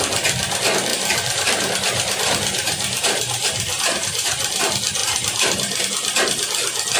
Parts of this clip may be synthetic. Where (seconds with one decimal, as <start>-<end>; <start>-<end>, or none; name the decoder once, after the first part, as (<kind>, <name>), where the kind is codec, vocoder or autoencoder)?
0.9-4.6 (vocoder, BigVGAN v2); 5.0-5.8